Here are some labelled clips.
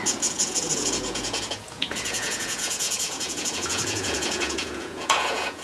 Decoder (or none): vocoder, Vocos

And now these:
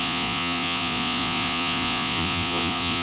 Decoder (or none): vocoder, Vocos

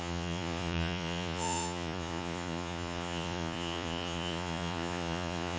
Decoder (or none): vocoder, Vocos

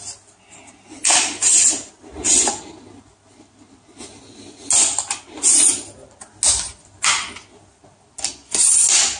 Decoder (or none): none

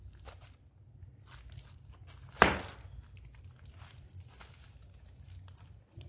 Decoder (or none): none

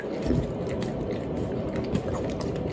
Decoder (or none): none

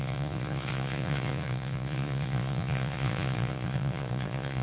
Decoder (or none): vocoder, Vocos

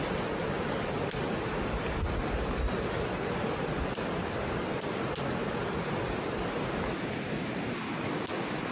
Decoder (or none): none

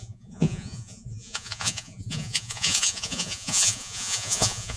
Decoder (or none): vocoder, Vocos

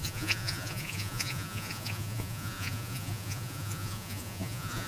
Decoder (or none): vocoder, Vocos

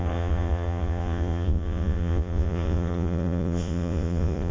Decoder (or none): vocoder, Vocos